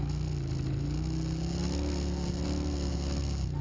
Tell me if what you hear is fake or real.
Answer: real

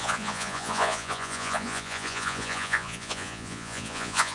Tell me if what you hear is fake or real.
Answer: fake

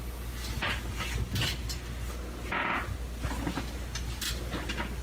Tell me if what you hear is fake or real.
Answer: real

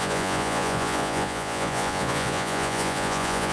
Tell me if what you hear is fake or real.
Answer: fake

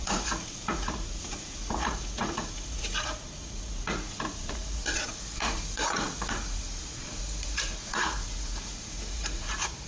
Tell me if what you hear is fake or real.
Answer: fake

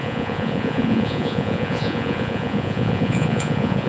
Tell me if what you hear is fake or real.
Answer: fake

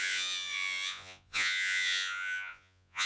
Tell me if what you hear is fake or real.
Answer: fake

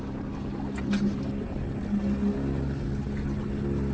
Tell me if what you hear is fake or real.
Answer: real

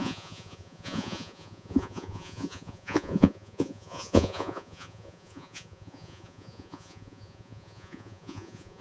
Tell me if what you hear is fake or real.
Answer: fake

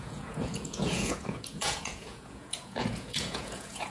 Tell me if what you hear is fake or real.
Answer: fake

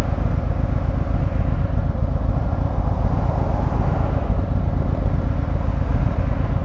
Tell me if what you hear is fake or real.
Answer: real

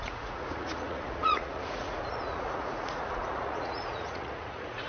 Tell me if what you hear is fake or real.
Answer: fake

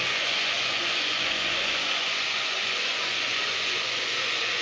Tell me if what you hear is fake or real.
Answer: fake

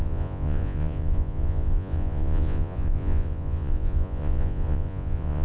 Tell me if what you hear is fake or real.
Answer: fake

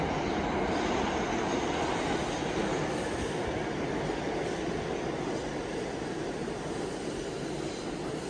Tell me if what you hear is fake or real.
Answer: real